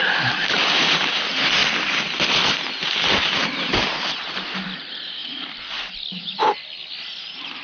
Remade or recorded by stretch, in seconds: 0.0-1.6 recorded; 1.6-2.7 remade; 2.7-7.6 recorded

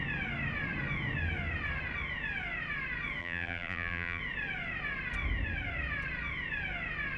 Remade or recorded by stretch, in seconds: 0.0-3.2 recorded; 3.2-4.2 remade; 4.2-7.2 recorded

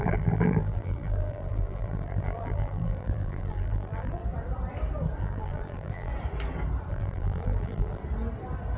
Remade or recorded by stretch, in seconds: 0.0-4.2 remade; 4.2-5.2 recorded; 5.2-6.1 remade; 6.1-6.9 recorded; 6.9-8.0 remade; 8.0-8.8 recorded

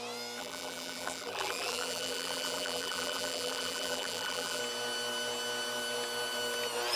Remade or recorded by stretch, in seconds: 0.0-0.4 recorded; 0.4-4.6 remade; 4.6-7.0 recorded

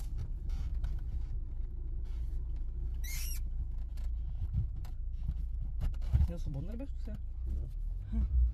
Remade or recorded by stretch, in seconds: 0.0-3.9 recorded; 3.9-4.8 remade; 4.8-5.4 recorded; 5.4-6.9 remade; 6.9-8.5 recorded